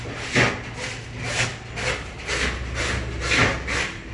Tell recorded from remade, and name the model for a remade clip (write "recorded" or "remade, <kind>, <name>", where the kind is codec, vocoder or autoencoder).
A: recorded